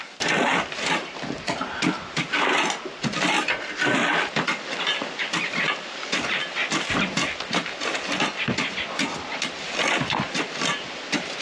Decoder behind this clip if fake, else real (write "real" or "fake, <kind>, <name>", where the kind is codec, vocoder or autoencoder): fake, vocoder, BigVGAN v2